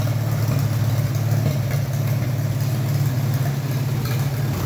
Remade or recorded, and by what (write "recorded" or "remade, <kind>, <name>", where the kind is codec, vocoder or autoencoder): recorded